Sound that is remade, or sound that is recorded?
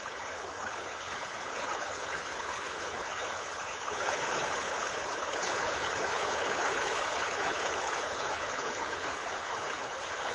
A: remade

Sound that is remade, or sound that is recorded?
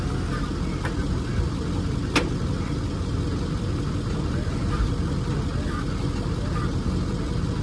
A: recorded